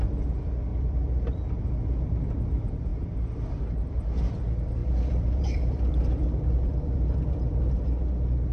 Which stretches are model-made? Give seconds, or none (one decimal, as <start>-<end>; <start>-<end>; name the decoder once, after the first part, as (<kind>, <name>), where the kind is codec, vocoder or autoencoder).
0.7-1.6 (vocoder, BigVGAN v2); 4.8-7.4